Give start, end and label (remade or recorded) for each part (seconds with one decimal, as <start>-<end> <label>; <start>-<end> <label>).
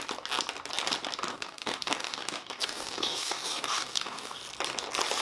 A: 0.0-1.3 recorded; 1.3-4.4 remade; 4.4-5.2 recorded